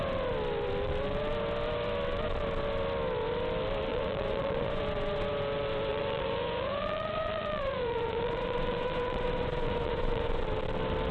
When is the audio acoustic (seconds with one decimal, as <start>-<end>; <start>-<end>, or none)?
0.0-3.9; 4.8-5.9; 10.4-11.1